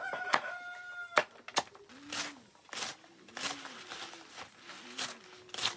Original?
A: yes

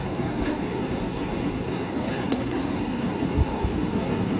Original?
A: no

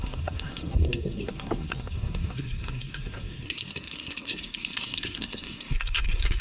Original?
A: no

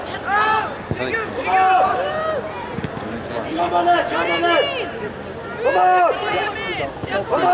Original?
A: yes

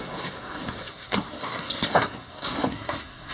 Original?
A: no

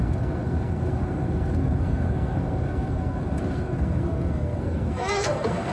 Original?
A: no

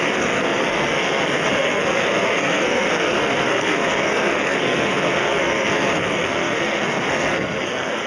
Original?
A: no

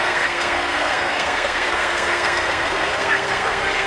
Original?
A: no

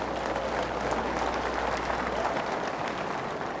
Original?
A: yes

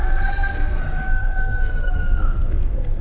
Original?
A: no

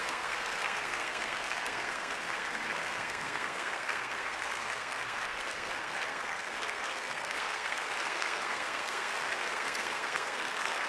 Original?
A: no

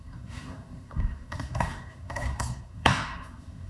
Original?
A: no